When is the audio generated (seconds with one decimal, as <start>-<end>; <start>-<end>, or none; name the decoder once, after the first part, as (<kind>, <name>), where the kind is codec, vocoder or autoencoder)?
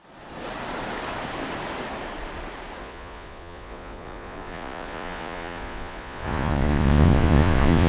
2.8-7.9 (vocoder, Vocos)